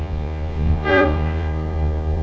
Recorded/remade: remade